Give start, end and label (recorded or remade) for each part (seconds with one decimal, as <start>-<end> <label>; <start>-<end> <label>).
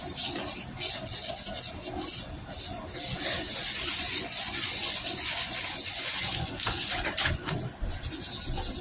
0.0-3.8 recorded; 3.8-6.9 remade; 6.9-8.8 recorded